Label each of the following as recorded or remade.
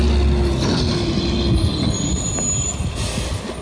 recorded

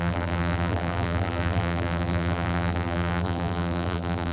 remade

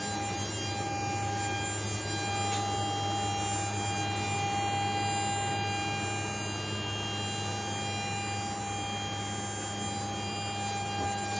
recorded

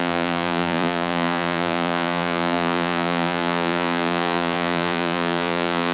remade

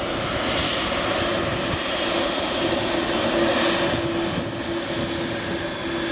recorded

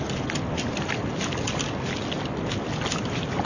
recorded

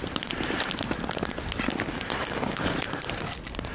recorded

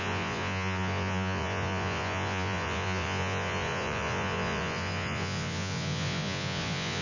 remade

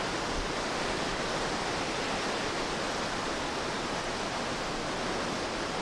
recorded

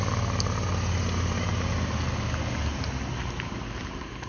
recorded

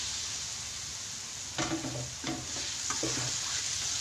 recorded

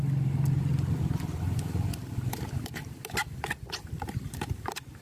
recorded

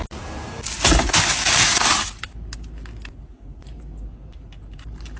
recorded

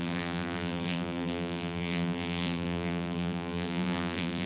remade